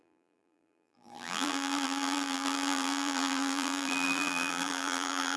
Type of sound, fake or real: fake